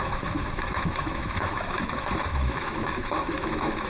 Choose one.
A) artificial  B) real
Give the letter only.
A